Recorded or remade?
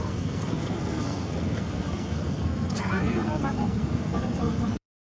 remade